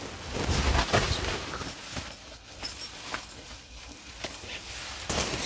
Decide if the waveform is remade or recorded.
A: recorded